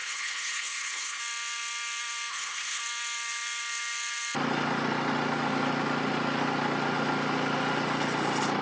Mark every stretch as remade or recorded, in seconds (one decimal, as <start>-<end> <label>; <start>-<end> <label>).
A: 0.0-1.2 remade; 1.2-2.3 recorded; 2.3-2.8 remade; 2.8-8.6 recorded